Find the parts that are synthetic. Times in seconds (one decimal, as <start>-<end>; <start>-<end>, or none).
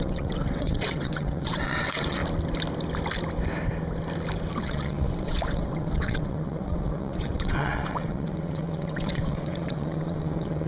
0.0-2.2; 4.6-10.7